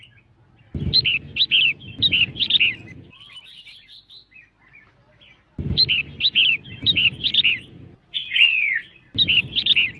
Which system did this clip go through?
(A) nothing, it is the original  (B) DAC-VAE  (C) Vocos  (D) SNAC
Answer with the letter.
A